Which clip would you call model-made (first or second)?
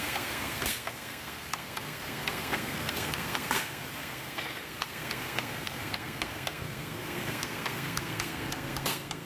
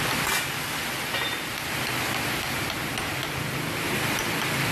first